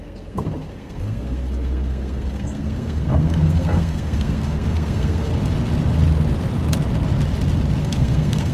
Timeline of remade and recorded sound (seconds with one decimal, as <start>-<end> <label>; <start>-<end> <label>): 0.0-5.3 remade; 5.3-7.8 recorded; 7.8-8.5 remade